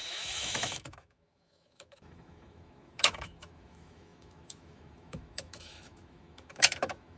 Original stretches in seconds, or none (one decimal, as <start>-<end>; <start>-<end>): none